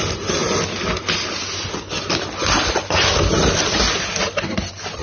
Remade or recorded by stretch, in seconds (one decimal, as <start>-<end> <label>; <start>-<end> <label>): 0.0-5.0 recorded